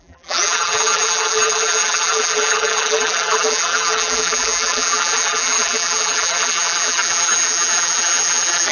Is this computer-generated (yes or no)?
yes